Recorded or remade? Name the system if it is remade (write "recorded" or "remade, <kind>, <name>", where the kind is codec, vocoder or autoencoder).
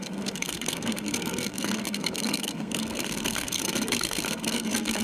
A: remade, codec, SNAC